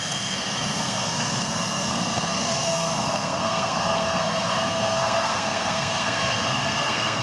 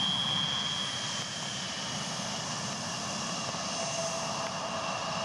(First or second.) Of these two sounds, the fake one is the first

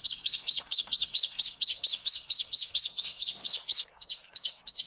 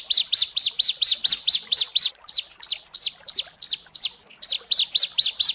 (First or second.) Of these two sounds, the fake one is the first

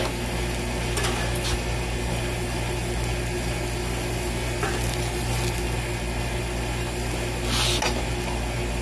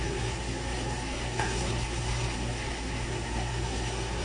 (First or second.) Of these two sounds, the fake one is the second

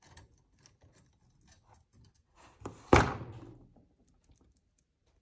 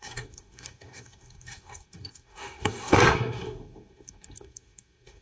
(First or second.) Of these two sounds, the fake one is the second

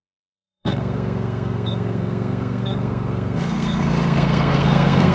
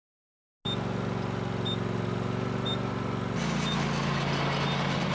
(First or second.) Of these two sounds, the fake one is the first